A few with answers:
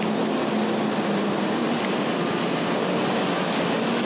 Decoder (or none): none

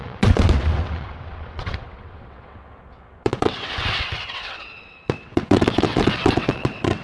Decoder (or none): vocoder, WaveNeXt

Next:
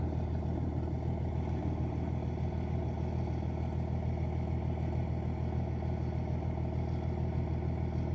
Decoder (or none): none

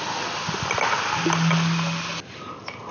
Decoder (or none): none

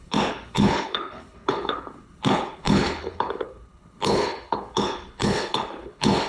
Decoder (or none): codec, HILCodec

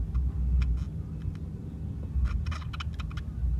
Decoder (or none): none